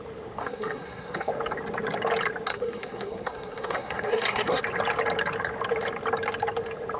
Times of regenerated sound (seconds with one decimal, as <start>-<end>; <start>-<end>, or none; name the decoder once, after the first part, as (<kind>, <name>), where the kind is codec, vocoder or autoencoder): 0.4-1.3 (codec, SNAC); 2.5-4.6